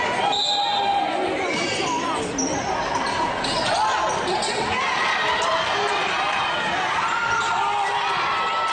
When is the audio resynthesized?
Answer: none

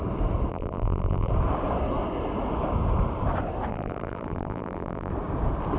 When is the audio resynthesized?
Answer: 0.5-1.3 (vocoder, BigVGAN v2); 3.7-5.1

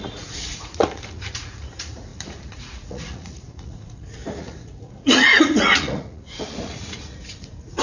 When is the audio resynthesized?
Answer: 0.0-7.8 (vocoder, Vocos)

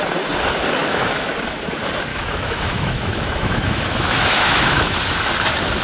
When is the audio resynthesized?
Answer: 0.8-1.3 (autoencoder, DAC-VAE); 2.1-5.3

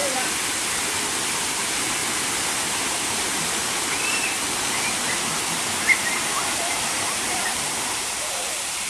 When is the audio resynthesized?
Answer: 1.3-2.0 (vocoder, BigVGAN v2); 2.5-3.6; 6.6-8.9

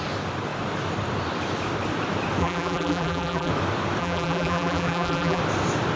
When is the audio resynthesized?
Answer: 2.4-3.5 (vocoder, BigVGAN v2); 4.0-5.4

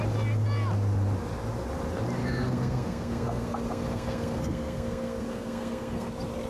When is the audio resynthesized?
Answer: 2.2-6.1 (codec, SNAC)

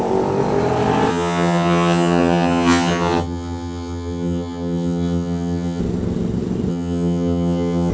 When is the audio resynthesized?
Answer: 1.1-5.8 (vocoder, HiFi-GAN); 6.7-7.9